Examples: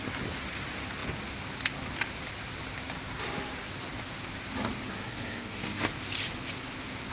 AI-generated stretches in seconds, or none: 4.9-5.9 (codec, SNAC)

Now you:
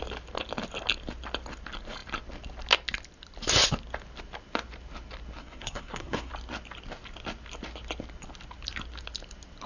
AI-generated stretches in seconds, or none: 5.4-6.3 (codec, SNAC)

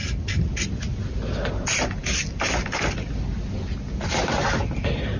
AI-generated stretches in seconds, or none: none

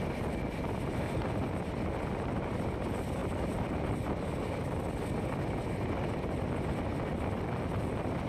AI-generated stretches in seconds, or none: none

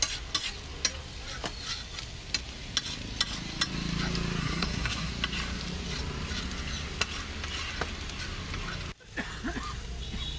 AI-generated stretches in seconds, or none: 4.4-5.1 (codec, SNAC)

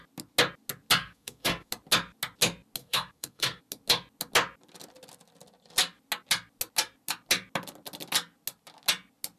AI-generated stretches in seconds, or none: 1.0-1.7 (codec, SNAC); 2.8-3.6